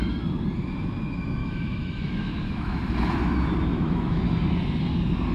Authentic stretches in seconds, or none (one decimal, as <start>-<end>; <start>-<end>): 0.0-1.4; 2.8-3.7; 4.2-5.3